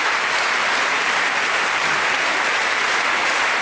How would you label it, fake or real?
real